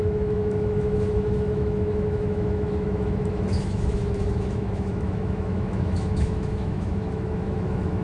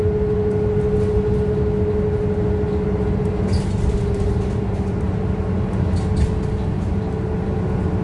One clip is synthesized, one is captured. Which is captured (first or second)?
second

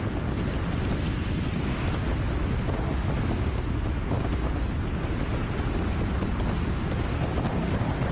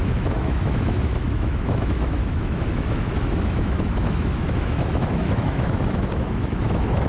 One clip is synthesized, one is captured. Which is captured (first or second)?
first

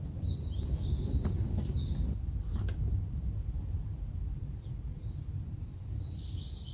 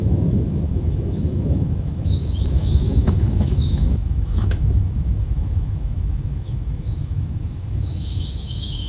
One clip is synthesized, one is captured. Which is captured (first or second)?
first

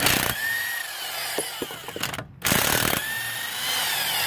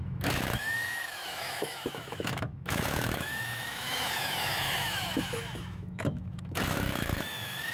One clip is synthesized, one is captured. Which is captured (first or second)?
first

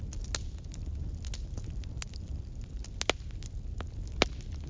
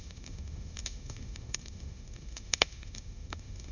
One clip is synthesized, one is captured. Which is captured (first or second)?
first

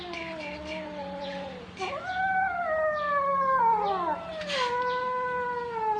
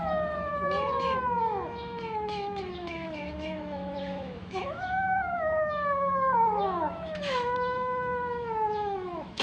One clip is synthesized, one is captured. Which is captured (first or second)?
first